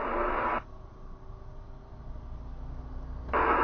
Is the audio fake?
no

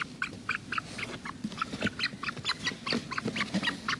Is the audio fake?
no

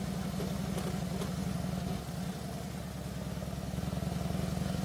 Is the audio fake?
no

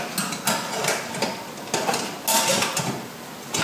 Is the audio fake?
no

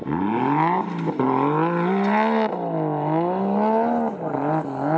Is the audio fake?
no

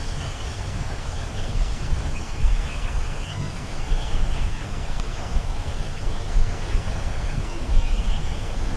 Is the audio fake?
yes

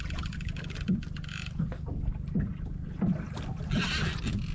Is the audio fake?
no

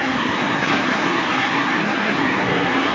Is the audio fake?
yes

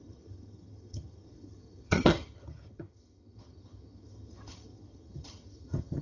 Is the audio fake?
yes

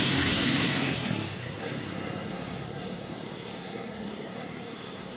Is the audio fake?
yes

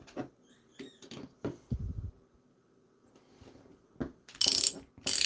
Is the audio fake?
no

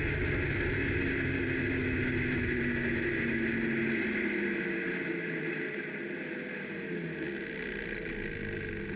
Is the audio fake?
no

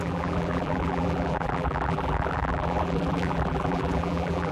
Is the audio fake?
yes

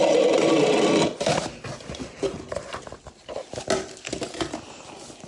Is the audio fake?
no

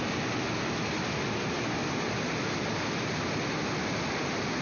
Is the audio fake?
no